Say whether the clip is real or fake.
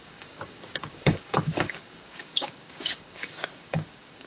fake